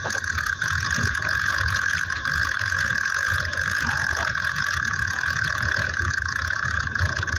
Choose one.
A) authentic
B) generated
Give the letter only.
B